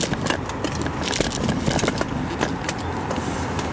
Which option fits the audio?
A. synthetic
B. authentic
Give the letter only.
B